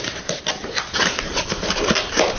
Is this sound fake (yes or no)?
yes